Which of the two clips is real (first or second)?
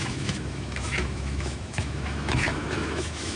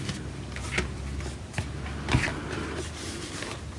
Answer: second